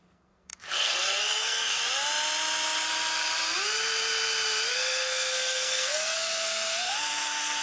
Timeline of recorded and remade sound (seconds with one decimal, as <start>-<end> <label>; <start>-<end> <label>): 0.0-1.8 remade; 1.8-4.7 recorded; 4.7-7.6 remade